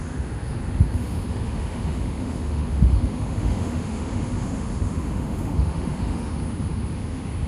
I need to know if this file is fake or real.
fake